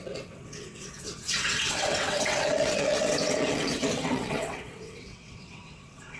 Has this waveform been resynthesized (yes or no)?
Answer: yes